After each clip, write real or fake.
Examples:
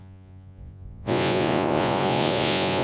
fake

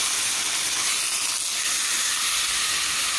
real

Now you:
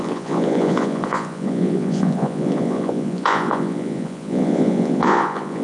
fake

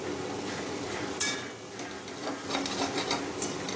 real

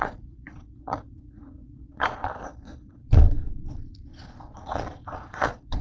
fake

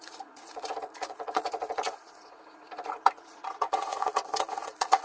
fake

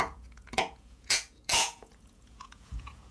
fake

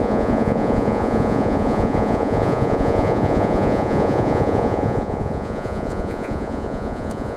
fake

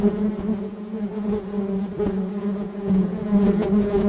fake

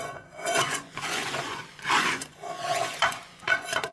fake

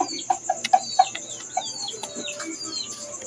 real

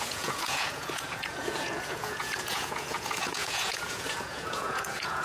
fake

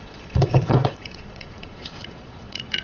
fake